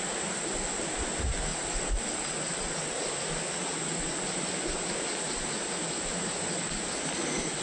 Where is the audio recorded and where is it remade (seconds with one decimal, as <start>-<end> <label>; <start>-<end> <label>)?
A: 0.0-7.6 recorded